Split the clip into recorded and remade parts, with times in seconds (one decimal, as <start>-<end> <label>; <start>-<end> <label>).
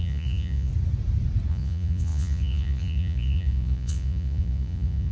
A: 0.0-0.7 remade; 0.7-1.5 recorded; 1.5-5.1 remade